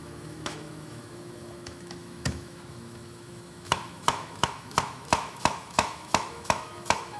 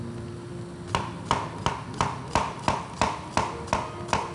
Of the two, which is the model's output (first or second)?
first